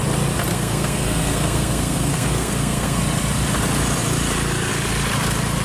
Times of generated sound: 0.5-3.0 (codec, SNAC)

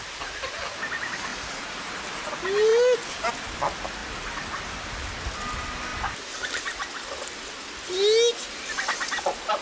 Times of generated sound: 1.3-1.8 (vocoder, Vocos)

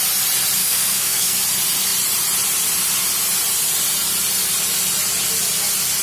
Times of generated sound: 0.6-1.4 (codec, SNAC)

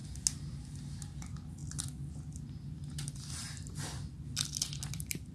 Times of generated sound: none

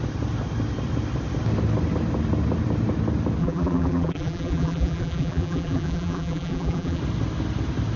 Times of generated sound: 3.4-7.0 (vocoder, BigVGAN v2)

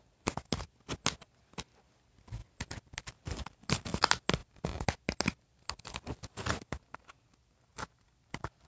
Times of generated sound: 7.7-8.7 (vocoder, BigVGAN v2)